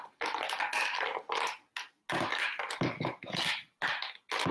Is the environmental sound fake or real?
real